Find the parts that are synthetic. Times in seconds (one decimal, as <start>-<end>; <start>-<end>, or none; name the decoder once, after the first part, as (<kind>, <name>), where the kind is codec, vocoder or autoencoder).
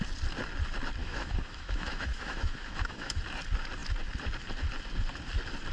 1.0-3.2 (autoencoder, DAC-VAE)